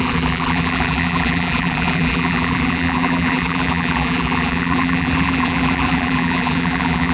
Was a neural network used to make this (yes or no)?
yes